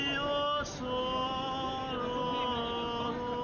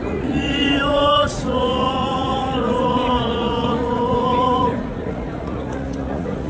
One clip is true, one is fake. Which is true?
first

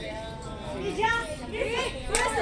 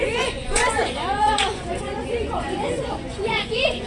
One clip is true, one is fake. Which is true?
first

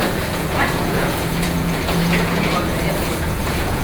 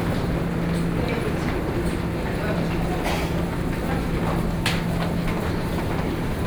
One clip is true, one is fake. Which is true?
second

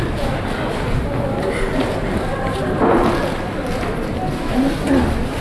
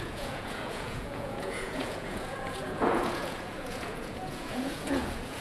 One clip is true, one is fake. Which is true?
first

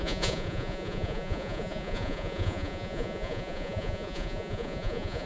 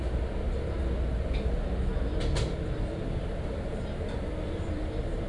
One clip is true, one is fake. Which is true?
second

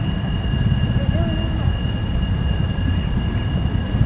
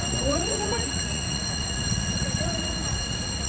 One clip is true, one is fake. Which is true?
first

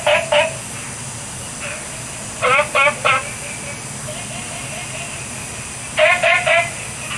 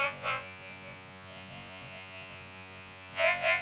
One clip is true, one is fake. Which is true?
first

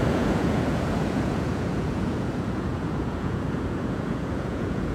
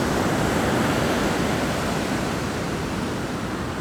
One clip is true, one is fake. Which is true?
second